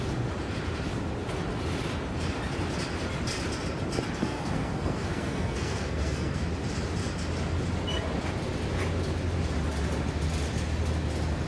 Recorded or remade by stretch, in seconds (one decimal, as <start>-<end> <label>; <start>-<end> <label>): 0.0-4.2 recorded; 4.2-6.4 remade; 6.4-11.5 recorded